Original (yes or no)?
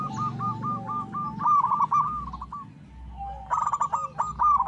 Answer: yes